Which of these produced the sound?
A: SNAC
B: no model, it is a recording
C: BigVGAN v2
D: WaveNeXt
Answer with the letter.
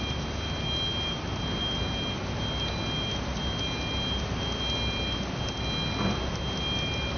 B